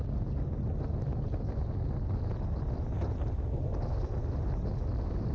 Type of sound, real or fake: real